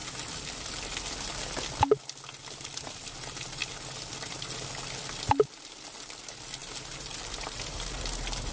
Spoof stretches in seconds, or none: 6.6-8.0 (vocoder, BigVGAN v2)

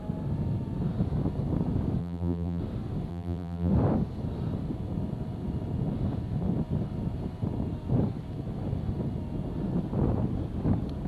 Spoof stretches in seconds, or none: 2.0-2.6 (vocoder, BigVGAN v2); 3.1-3.7

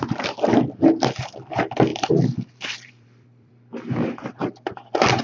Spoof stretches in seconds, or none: 1.9-3.5 (vocoder, BigVGAN v2)

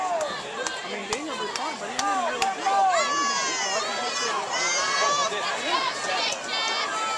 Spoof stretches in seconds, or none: 4.0-6.3 (vocoder, BigVGAN v2)